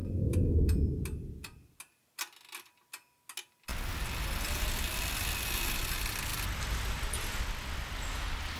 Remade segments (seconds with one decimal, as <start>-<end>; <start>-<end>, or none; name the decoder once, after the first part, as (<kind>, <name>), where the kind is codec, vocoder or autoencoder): 0.0-0.6 (vocoder, BigVGAN v2)